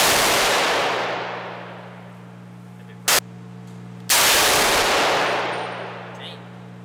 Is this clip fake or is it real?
real